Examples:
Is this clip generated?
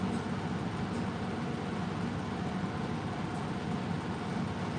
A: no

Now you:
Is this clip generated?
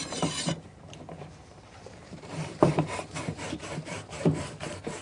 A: yes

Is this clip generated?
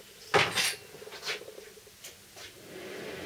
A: no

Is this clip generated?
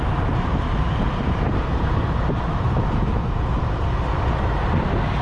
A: yes